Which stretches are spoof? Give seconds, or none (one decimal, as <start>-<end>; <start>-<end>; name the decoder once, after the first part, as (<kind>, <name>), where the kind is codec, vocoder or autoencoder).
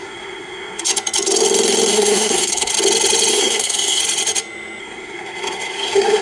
0.0-0.9 (codec, SNAC); 1.9-2.7; 3.3-4.0; 4.8-6.2